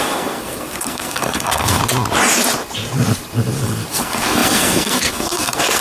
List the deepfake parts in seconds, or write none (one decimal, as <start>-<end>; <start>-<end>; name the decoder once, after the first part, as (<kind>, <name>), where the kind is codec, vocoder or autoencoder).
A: 0.0-1.8 (codec, SNAC); 3.9-5.8